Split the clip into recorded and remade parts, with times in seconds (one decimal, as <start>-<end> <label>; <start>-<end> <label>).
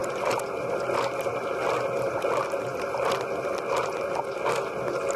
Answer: 0.0-5.2 recorded